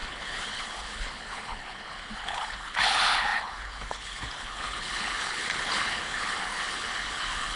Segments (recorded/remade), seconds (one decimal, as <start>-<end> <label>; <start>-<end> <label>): 0.0-7.6 remade